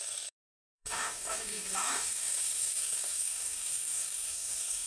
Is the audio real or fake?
fake